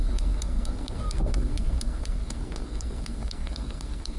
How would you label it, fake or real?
fake